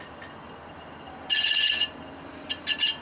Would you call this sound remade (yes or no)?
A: no